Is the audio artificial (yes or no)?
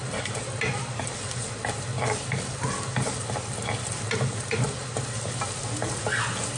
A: no